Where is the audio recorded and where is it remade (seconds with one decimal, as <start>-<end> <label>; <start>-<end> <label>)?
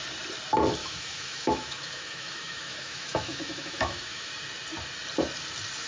0.0-0.8 recorded; 0.8-4.3 remade; 4.3-5.9 recorded